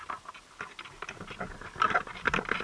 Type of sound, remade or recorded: recorded